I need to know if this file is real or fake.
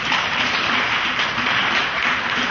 fake